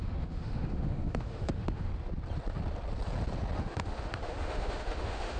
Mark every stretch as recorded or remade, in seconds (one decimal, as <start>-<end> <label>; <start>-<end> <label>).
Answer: 0.0-1.9 remade; 1.9-3.6 recorded; 3.6-5.4 remade